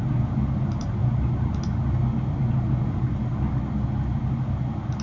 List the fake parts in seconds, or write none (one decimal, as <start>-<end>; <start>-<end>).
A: none